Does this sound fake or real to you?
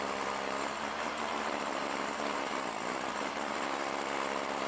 real